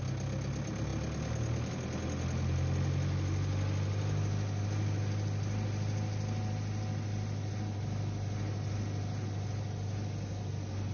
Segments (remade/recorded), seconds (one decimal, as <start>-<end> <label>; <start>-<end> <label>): 0.0-10.9 recorded